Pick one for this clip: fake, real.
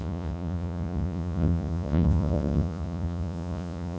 fake